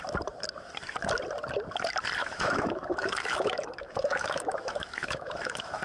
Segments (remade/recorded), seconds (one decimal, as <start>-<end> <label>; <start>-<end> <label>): 0.0-2.2 recorded; 2.2-5.8 remade